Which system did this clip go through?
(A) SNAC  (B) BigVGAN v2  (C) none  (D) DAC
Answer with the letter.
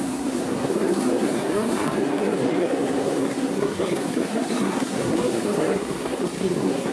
A